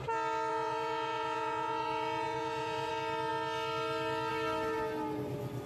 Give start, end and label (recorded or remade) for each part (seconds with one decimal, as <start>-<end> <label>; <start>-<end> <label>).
0.0-0.5 recorded; 0.5-2.9 remade; 2.9-5.7 recorded